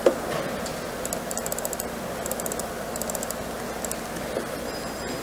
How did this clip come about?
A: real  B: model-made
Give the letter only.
A